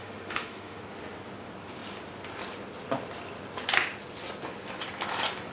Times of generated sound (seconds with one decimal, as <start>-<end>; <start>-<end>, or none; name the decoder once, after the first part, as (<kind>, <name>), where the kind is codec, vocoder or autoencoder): 0.0-0.8 (autoencoder, DAC-VAE)